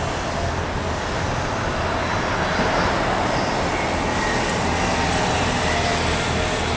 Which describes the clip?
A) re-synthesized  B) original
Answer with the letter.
B